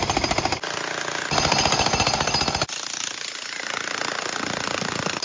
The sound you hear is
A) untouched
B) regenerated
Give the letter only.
A